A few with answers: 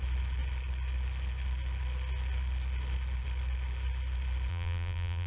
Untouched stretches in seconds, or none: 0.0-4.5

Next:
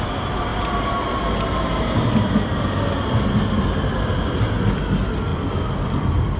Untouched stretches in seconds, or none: 0.0-6.4

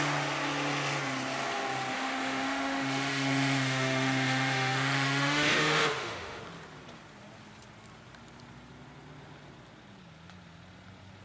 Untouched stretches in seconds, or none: 0.0-1.9; 6.4-11.2